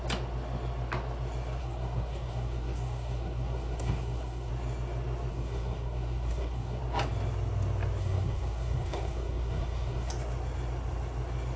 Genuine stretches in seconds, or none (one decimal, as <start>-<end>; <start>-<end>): 0.0-1.6; 4.5-5.3; 6.8-8.0; 10.1-11.6